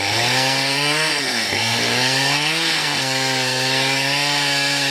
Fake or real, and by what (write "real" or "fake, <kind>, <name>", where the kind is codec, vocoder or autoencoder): fake, codec, SNAC